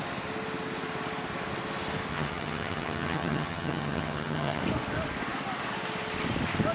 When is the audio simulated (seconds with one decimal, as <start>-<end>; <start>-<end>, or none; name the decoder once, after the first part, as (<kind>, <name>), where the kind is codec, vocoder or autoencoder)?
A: 2.1-4.6 (vocoder, HiFi-GAN)